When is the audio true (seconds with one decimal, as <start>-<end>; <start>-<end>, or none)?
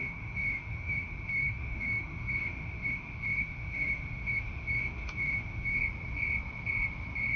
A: 5.8-7.4